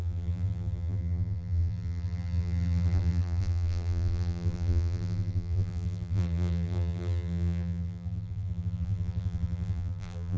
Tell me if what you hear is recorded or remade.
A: remade